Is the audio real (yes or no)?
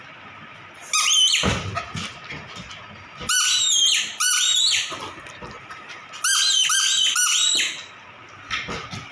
yes